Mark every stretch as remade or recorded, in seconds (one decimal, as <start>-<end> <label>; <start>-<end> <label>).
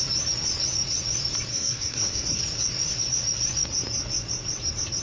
0.0-1.5 recorded; 1.5-2.4 remade; 2.4-5.0 recorded